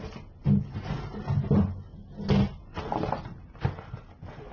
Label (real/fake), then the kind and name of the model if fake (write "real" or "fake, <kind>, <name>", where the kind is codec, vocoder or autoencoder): real